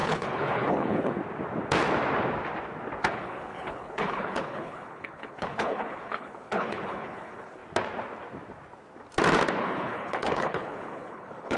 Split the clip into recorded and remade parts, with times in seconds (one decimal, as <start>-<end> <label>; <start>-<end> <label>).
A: 0.0-1.2 remade; 1.2-3.1 recorded; 3.1-7.6 remade; 7.6-9.6 recorded; 9.6-11.6 remade